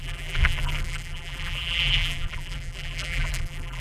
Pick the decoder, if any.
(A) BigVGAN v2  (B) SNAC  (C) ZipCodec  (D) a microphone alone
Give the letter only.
A